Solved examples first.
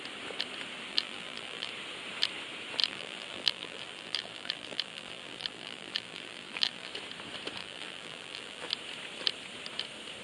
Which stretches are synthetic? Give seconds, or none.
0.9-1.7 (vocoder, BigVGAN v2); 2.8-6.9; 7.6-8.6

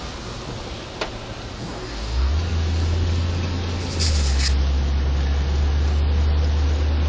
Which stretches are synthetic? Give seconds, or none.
1.6-2.3 (codec, DAC)

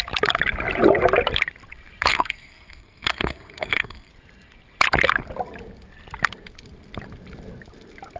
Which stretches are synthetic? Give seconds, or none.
2.1-4.1 (codec, SNAC)

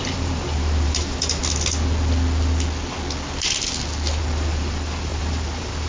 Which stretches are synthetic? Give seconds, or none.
0.0-1.4 (vocoder, BigVGAN v2); 4.2-5.9

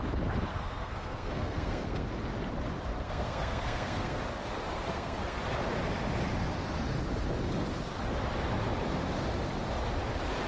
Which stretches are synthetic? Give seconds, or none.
0.5-2.1 (codec, SNAC); 2.9-4.2; 4.9-5.4

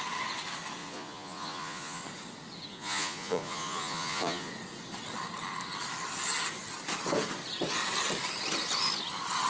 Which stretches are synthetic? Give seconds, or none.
0.8-2.0 (vocoder, Vocos); 2.7-4.5

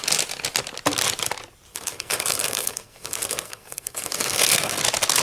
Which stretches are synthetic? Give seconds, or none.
1.7-4.8 (codec, SNAC)

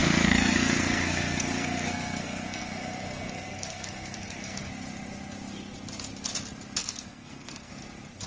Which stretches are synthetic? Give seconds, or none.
0.0-4.7 (codec, SNAC); 6.8-7.7